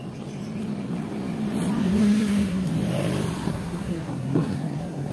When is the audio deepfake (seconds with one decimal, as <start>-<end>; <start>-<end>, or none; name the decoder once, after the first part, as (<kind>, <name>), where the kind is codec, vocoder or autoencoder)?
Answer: 1.8-2.7 (codec, SNAC); 3.5-5.1